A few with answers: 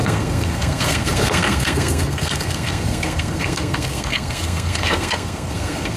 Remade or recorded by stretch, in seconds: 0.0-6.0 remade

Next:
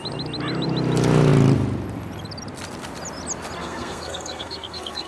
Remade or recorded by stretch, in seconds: 0.0-3.6 recorded; 3.6-5.1 remade

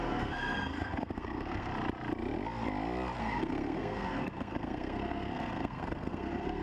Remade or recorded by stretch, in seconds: 0.0-1.7 remade; 1.7-3.2 recorded; 3.2-6.6 remade

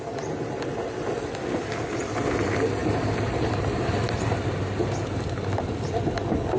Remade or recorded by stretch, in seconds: 0.0-6.6 recorded

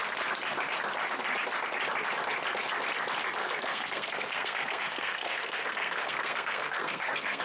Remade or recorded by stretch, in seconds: 0.0-3.4 recorded; 3.4-7.4 remade

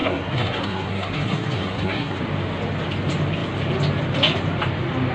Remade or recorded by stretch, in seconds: 0.0-2.2 remade; 2.2-5.1 recorded

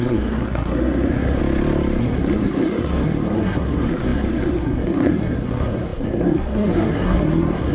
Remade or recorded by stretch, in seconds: 0.0-1.4 remade; 1.4-2.0 recorded; 2.0-7.7 remade

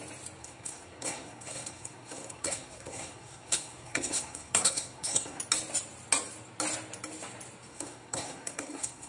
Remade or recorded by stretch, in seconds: 0.0-0.4 recorded; 0.4-5.4 remade; 5.4-7.7 recorded; 7.7-9.1 remade